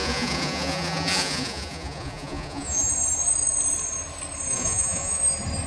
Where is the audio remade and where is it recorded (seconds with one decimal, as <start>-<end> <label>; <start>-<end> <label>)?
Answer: 0.0-2.9 remade; 2.9-4.5 recorded; 4.5-5.2 remade; 5.2-5.7 recorded